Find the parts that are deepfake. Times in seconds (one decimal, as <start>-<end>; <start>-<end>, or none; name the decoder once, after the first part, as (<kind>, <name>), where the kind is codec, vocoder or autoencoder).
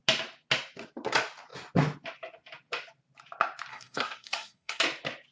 3.7-4.8 (codec, SNAC)